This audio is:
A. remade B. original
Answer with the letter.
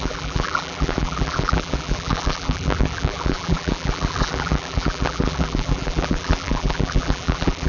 A